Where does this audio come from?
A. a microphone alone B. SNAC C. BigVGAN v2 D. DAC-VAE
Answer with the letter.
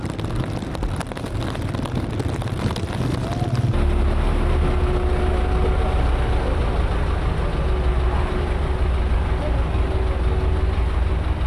A